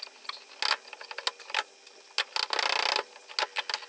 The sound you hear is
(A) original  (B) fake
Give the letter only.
A